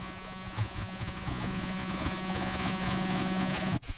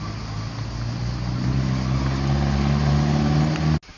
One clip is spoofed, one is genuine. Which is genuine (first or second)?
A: second